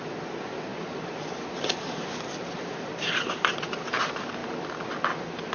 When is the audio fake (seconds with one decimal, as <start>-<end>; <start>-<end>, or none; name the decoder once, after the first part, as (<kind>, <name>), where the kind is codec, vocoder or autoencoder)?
0.7-4.0 (vocoder, BigVGAN v2)